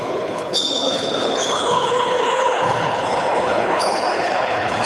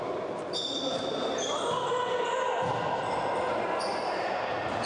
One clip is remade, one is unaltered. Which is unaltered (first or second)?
second